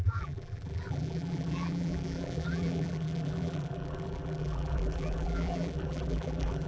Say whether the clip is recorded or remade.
remade